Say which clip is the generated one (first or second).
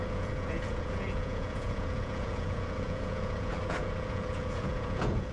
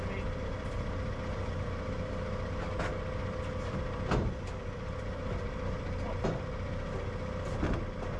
first